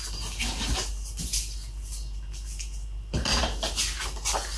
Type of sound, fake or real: real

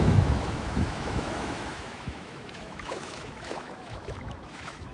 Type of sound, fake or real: fake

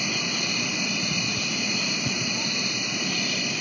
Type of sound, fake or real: real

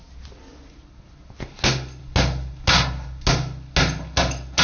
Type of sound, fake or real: real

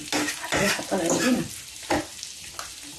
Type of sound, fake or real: real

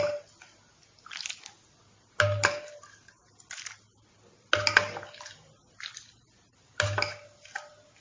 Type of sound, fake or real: real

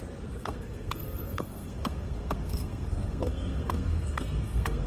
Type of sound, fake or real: fake